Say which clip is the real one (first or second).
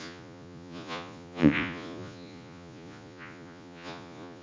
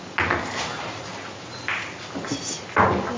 second